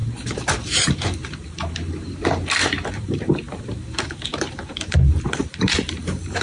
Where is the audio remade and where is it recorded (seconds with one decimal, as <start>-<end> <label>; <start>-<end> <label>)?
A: 0.0-6.4 remade